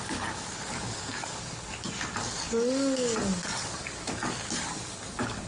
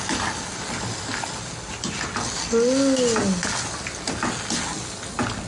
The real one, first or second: second